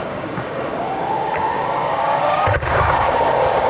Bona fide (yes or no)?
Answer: no